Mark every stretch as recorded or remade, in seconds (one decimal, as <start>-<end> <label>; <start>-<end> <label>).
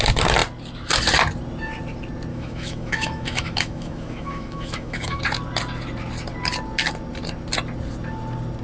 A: 0.0-2.3 recorded; 2.3-5.2 remade; 5.2-8.6 recorded